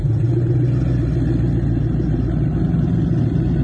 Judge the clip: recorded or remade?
recorded